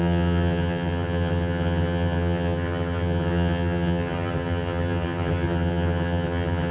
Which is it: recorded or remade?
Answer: remade